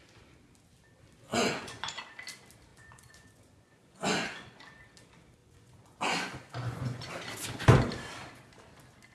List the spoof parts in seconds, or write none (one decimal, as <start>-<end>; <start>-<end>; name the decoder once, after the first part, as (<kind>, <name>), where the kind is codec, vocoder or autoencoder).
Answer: 1.3-2.0 (vocoder, Vocos); 2.7-4.6; 5.4-7.1

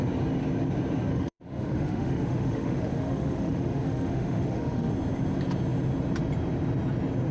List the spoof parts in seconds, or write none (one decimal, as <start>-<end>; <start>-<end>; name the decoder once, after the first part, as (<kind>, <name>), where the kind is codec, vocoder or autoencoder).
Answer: 1.1-4.9 (autoencoder, DAC-VAE)